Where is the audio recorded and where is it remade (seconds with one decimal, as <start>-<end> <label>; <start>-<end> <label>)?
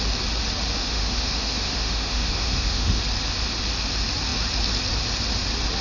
0.0-0.8 recorded; 0.8-3.0 remade; 3.0-5.8 recorded